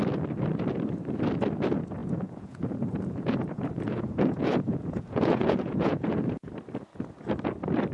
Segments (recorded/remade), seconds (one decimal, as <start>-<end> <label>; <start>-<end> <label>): 0.0-2.0 recorded; 2.0-6.5 remade; 6.5-7.9 recorded